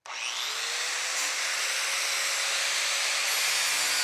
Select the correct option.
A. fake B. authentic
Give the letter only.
B